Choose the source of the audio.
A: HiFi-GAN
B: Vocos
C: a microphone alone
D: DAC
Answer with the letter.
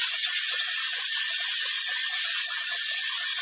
C